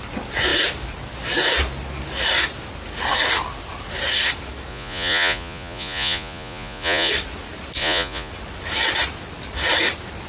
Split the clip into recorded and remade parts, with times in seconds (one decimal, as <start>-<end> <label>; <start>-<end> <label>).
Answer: 0.0-4.7 recorded; 4.7-7.1 remade; 7.1-7.8 recorded; 7.8-8.3 remade; 8.3-10.3 recorded